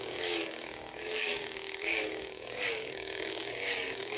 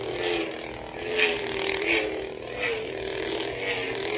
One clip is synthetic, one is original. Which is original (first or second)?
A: second